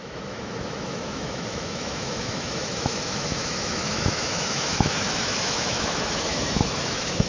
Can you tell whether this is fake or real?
fake